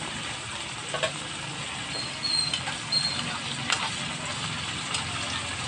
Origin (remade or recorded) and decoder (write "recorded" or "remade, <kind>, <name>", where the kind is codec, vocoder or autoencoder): recorded